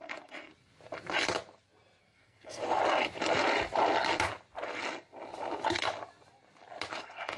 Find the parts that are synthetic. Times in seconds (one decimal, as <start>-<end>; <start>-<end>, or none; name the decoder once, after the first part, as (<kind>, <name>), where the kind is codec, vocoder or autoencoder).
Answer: 0.0-0.5 (codec, SNAC); 2.0-2.6; 7.0-7.4